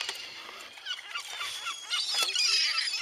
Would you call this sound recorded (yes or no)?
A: yes